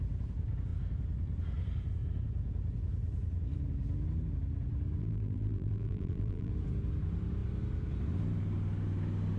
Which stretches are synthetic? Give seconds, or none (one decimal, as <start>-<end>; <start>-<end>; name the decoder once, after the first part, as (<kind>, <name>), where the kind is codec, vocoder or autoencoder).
5.0-6.5 (vocoder, BigVGAN v2)